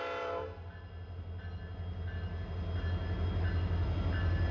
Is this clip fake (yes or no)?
no